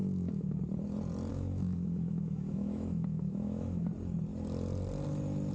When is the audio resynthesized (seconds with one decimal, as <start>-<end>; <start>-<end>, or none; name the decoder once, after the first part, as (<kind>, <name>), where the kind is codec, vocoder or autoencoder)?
0.0-0.6 (autoencoder, DAC-VAE); 1.3-3.9

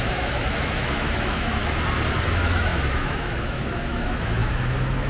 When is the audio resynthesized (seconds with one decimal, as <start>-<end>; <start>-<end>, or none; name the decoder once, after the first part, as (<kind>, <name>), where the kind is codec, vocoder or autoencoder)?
0.0-1.6 (autoencoder, DAC-VAE); 2.2-5.1

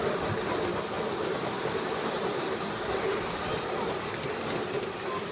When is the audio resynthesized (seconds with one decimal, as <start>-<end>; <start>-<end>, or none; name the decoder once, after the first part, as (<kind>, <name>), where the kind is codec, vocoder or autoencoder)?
none

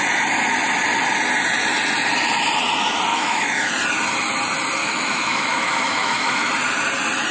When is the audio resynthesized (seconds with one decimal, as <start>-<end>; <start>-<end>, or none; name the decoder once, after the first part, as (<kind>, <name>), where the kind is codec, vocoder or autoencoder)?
3.1-3.7 (autoencoder, DAC-VAE); 4.8-6.5

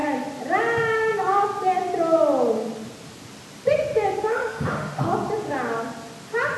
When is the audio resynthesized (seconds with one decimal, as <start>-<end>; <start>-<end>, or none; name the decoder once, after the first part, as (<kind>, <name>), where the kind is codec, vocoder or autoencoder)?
4.3-5.1 (autoencoder, DAC-VAE)

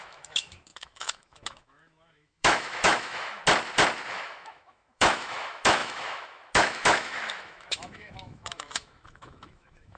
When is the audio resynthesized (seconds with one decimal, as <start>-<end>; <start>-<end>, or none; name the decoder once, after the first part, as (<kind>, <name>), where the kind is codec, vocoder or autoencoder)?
0.0-3.4 (autoencoder, DAC-VAE); 4.1-10.0